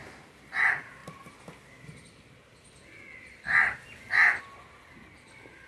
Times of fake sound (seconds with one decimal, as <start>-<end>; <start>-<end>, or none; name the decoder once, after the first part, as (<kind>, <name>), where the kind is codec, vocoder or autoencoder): none